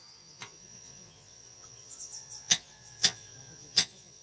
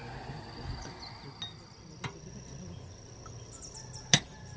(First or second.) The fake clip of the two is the first